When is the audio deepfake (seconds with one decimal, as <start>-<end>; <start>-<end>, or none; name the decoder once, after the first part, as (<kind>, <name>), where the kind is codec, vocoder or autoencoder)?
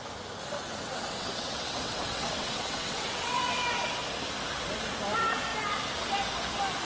0.8-3.3 (vocoder, WaveNeXt)